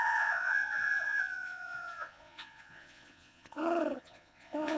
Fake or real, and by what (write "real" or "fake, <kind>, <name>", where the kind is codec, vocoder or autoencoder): fake, vocoder, Vocos